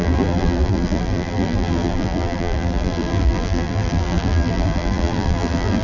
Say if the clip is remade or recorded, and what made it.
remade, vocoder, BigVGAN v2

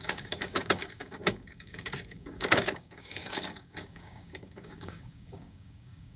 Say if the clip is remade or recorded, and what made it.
remade, codec, DAC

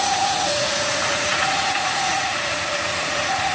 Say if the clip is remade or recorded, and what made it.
remade, vocoder, Vocos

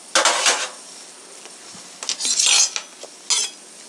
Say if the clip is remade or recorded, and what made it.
recorded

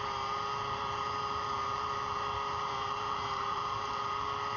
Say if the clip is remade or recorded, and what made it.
remade, vocoder, BigVGAN v2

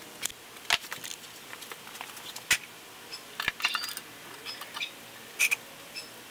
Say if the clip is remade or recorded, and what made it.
recorded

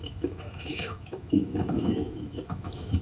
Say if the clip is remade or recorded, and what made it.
remade, autoencoder, DAC-VAE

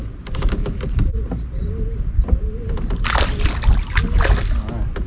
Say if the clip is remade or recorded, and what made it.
recorded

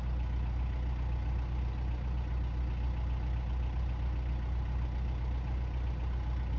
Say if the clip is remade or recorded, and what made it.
recorded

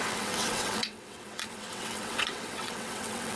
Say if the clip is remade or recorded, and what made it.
remade, vocoder, WaveNeXt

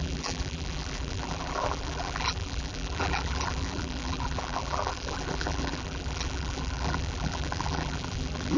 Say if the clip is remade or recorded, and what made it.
remade, vocoder, BigVGAN v2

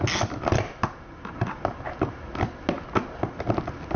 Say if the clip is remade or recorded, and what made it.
recorded